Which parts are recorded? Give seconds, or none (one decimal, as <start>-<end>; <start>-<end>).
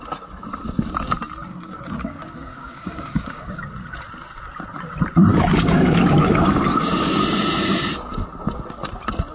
0.0-1.5; 3.6-5.3; 6.3-9.3